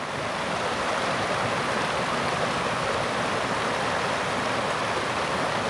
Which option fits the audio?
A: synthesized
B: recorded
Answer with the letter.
B